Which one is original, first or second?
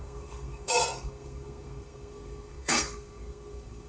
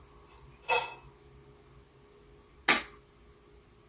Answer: second